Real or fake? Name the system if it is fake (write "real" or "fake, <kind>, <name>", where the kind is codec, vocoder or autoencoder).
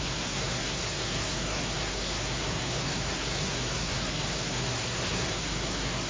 fake, codec, SNAC